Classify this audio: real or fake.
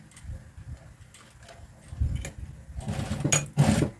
real